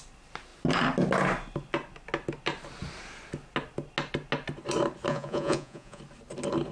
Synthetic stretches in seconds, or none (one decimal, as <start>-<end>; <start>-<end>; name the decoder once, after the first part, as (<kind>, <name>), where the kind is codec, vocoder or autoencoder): 5.1-6.0 (vocoder, Vocos)